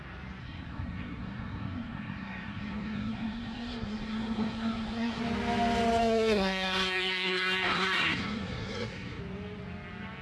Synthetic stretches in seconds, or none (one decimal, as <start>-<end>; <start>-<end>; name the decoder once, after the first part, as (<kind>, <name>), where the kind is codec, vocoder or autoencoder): 0.4-5.2 (codec, SNAC); 6.0-9.2